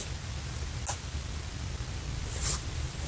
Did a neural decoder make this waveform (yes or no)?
no